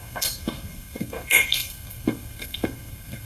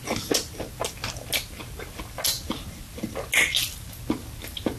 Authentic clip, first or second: second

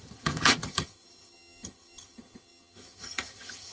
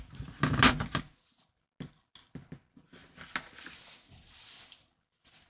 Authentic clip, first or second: second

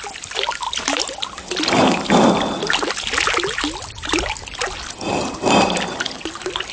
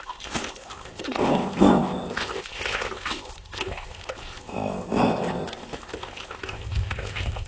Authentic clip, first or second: first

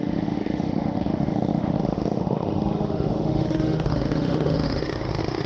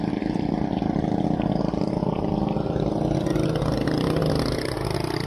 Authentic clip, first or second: second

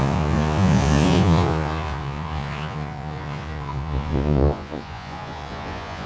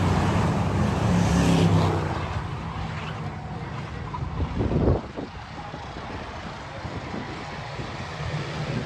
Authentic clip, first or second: second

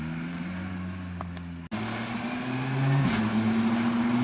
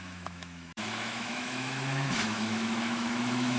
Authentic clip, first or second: first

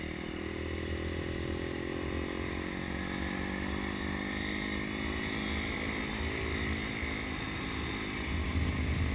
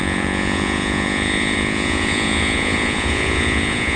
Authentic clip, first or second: first